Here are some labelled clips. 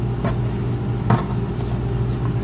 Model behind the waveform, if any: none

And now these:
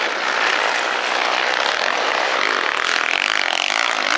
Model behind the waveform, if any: none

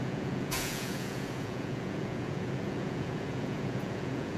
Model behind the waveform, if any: vocoder, Vocos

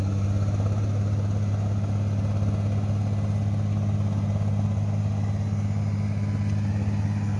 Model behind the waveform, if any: none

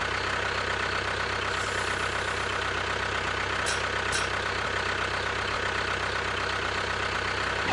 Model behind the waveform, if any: none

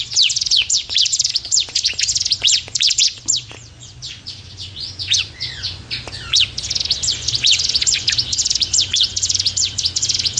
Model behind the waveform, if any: vocoder, Vocos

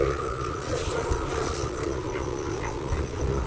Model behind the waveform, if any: vocoder, Vocos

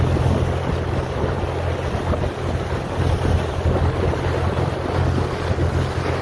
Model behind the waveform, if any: none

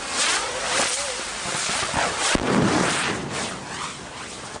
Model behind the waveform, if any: none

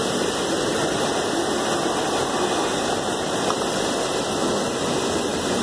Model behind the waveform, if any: none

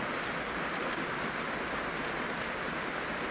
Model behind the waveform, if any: none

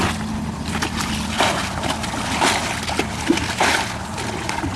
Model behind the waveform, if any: none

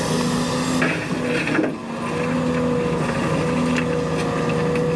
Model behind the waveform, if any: none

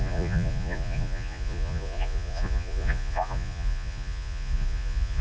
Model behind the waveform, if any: vocoder, Vocos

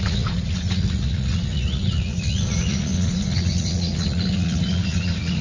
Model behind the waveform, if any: vocoder, Vocos